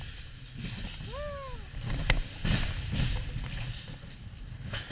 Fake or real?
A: real